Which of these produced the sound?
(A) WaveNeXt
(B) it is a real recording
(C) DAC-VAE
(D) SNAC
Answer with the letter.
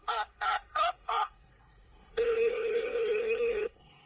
D